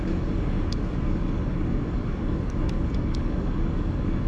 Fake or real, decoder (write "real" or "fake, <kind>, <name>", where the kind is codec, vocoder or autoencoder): fake, codec, DAC